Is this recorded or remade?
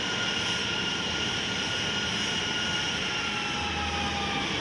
recorded